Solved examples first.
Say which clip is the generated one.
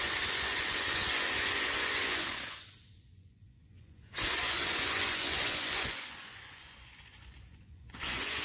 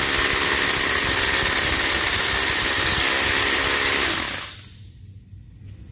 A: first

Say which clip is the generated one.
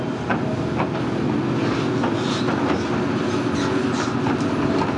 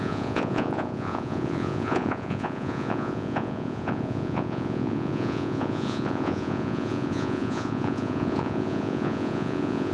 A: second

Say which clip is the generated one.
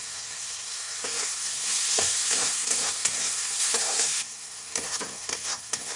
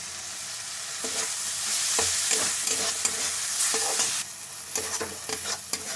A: first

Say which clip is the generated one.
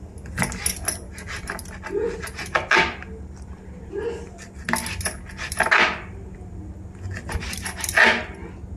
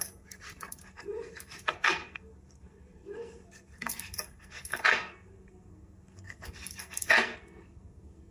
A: second